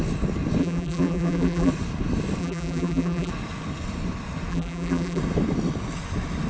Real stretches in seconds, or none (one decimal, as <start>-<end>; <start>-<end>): 0.0-0.6; 1.7-2.4; 3.3-4.5; 5.2-6.5